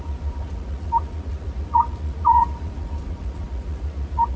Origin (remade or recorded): remade